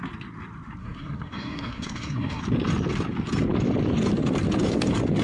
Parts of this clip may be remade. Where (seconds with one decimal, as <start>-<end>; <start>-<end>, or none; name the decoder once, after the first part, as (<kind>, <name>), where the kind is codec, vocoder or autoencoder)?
0.8-2.4 (codec, SNAC)